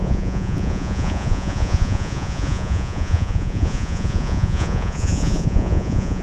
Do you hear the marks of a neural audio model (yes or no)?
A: yes